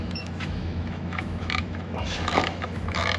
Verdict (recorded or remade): remade